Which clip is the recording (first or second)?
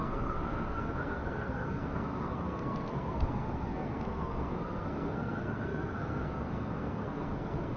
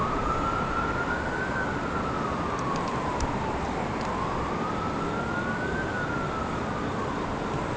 second